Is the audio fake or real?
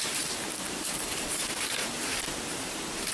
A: fake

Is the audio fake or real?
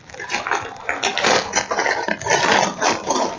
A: fake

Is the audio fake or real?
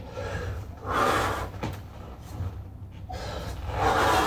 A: real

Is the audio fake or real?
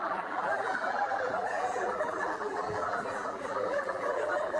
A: fake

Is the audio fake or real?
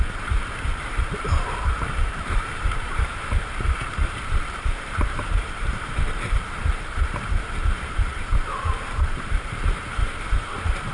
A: fake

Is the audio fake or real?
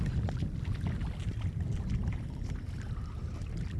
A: real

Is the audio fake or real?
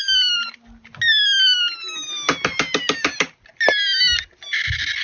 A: real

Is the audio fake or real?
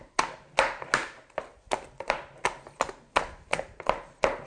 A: real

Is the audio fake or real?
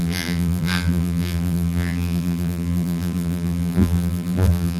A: fake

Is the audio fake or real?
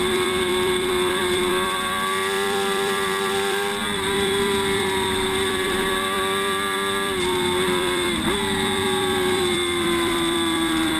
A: fake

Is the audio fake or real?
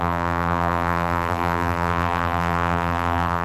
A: fake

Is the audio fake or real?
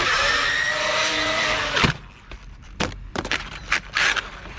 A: fake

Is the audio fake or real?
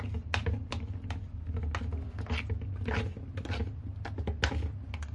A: real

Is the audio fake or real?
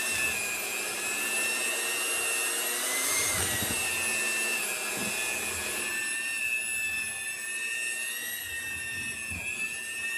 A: real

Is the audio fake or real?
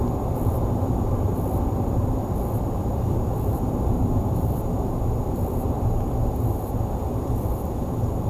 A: fake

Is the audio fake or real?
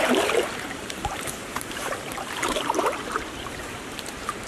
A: fake